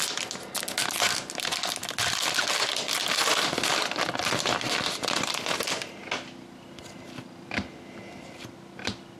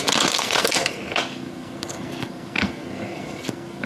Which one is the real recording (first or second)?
first